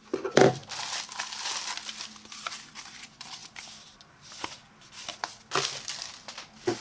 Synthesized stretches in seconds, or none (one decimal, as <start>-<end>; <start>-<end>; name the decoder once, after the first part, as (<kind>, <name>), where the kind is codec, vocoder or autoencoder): none